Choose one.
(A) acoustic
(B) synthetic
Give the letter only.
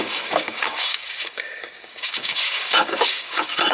B